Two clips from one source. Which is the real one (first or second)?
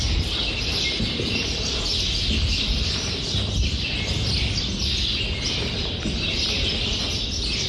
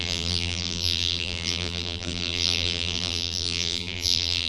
first